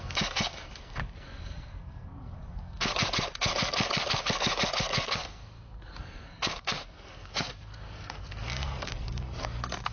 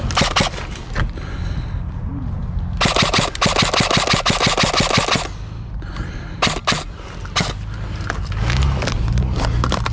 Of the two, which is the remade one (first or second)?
first